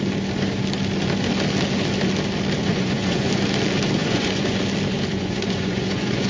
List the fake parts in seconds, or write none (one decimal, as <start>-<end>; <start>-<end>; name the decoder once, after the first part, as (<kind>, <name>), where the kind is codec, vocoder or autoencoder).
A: 2.6-3.3 (vocoder, Vocos); 4.0-4.6; 5.1-6.3